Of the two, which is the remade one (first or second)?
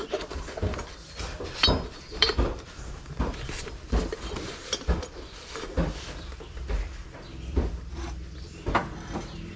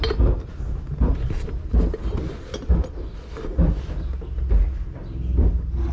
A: first